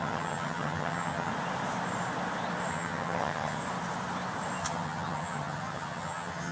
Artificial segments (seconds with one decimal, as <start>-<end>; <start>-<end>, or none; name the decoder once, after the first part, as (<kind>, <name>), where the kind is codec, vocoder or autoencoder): 0.0-1.3 (vocoder, HiFi-GAN); 2.7-3.6; 4.6-6.5